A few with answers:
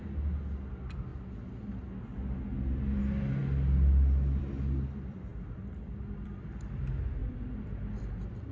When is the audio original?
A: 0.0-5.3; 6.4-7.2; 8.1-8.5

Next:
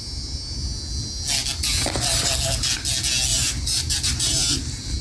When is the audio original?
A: 0.0-1.7; 2.3-3.3